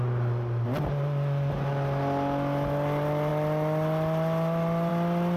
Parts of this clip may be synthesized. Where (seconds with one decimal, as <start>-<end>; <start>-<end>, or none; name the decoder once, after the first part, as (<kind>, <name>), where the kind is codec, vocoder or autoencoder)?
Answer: none